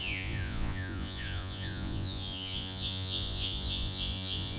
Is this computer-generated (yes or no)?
yes